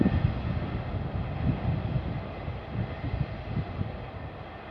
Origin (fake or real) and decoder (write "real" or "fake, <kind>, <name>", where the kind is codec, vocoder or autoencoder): real